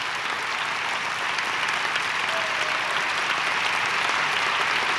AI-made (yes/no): no